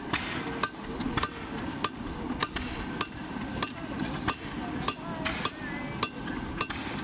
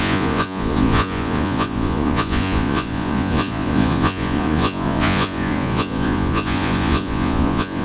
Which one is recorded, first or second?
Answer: first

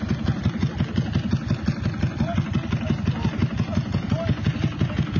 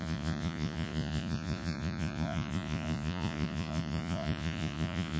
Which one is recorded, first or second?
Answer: first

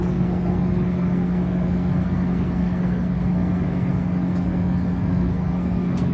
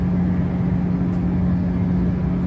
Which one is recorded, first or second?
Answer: second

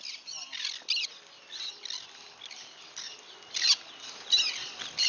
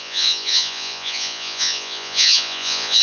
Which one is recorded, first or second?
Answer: first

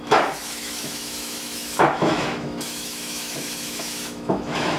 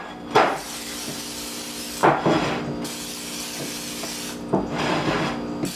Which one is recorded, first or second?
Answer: second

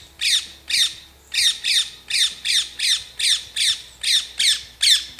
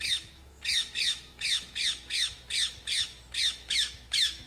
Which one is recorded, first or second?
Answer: first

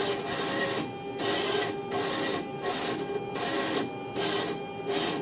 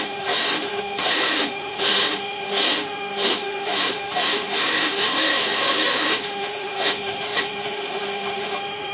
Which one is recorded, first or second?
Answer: first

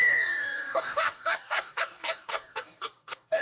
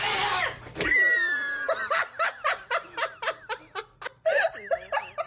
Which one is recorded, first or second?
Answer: second